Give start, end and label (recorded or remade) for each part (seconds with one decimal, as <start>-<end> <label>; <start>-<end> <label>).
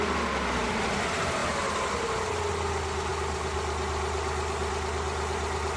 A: 0.0-5.8 recorded